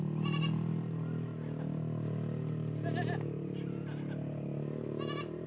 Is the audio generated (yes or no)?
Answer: no